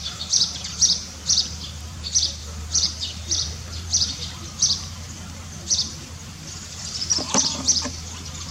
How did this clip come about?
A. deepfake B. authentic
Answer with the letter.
A